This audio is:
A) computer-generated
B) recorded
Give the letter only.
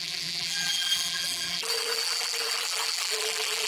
A